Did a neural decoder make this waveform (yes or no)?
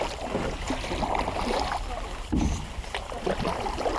yes